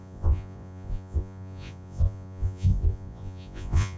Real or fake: fake